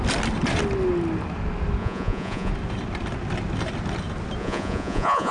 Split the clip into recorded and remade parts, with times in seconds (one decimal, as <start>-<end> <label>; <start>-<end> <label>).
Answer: 0.0-1.8 recorded; 1.8-2.5 remade; 2.5-4.4 recorded; 4.4-5.3 remade